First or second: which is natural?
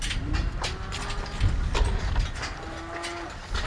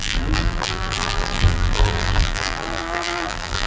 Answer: first